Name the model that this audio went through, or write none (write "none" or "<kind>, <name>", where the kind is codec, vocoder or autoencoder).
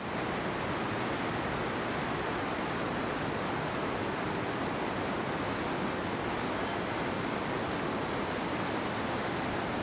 none